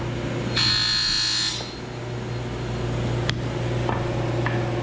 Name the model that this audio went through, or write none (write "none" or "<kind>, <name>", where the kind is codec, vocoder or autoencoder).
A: none